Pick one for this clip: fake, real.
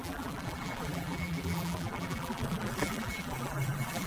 fake